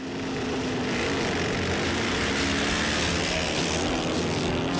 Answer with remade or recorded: recorded